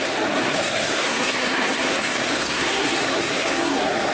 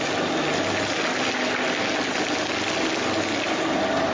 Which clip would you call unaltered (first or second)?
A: second